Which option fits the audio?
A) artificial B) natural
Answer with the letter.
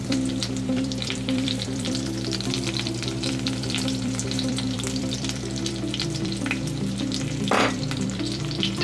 A